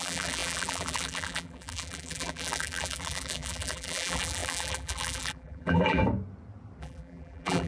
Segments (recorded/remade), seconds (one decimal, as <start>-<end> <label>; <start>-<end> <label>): 0.0-6.0 remade; 6.0-6.8 recorded; 6.8-7.7 remade